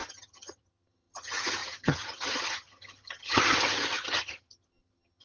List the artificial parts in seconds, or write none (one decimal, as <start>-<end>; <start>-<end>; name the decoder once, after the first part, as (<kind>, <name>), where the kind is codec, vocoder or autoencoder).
0.0-5.2 (vocoder, HiFi-GAN)